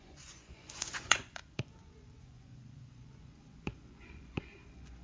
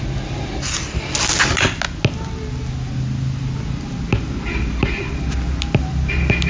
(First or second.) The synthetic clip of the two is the first